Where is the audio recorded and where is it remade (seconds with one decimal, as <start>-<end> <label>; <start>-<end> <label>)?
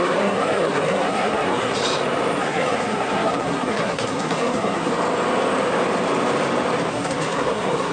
0.0-1.8 remade; 1.8-2.4 recorded; 2.4-4.9 remade; 4.9-6.9 recorded; 6.9-7.9 remade